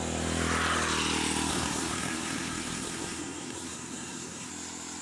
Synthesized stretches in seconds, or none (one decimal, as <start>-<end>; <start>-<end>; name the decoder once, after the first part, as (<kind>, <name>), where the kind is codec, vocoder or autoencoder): 1.5-4.5 (codec, SNAC)